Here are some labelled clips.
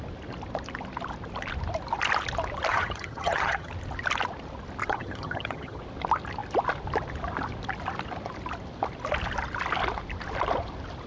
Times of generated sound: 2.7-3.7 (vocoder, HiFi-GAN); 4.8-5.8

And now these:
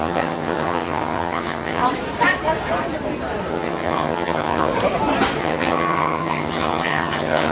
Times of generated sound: 0.0-1.8 (vocoder, HiFi-GAN); 3.5-4.7; 5.4-7.5

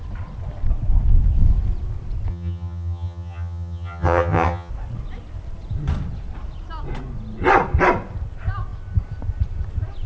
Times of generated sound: 2.3-4.7 (vocoder, HiFi-GAN)

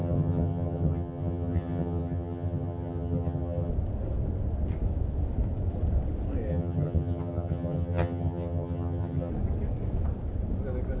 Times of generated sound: 0.0-3.7 (vocoder, HiFi-GAN); 6.5-9.3